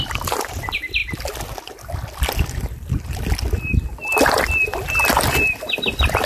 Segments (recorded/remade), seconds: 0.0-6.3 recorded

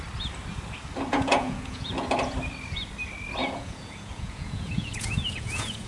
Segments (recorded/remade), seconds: 0.0-1.1 recorded; 1.1-1.9 remade; 1.9-3.4 recorded; 3.4-5.9 remade

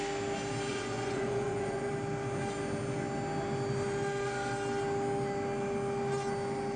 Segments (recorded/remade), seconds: 0.0-0.7 recorded; 0.7-1.9 remade; 1.9-6.8 recorded

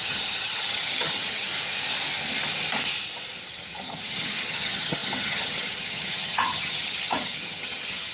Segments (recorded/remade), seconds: 0.0-1.5 remade; 1.5-3.5 recorded; 3.5-8.1 remade

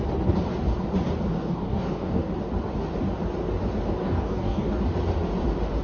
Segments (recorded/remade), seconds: 0.0-1.4 recorded; 1.4-2.3 remade; 2.3-4.0 recorded; 4.0-4.8 remade; 4.8-5.8 recorded

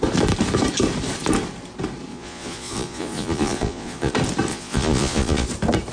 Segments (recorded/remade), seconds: 0.0-2.1 recorded; 2.1-4.1 remade; 4.1-4.5 recorded; 4.5-5.5 remade; 5.5-5.9 recorded

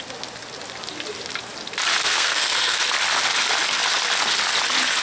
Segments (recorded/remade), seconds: 0.0-2.0 recorded; 2.0-2.8 remade; 2.8-5.0 recorded

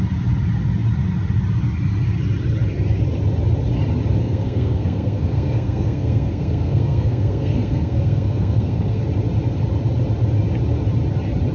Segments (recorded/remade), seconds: 0.0-4.2 recorded; 4.2-9.0 remade; 9.0-11.5 recorded